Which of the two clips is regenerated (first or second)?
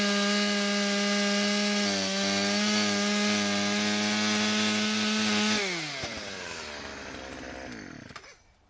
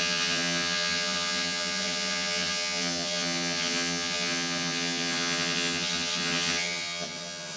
second